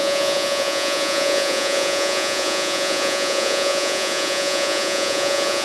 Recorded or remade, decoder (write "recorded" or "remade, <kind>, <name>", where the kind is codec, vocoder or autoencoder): remade, vocoder, Vocos